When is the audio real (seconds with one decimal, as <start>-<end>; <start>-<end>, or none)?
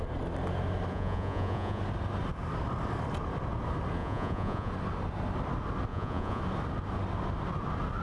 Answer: 0.0-0.9; 1.8-4.0; 4.7-5.9; 6.4-8.0